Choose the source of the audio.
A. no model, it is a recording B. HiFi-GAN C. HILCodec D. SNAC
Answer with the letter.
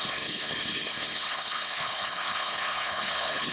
C